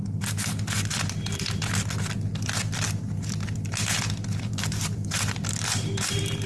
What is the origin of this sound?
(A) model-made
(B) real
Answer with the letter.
B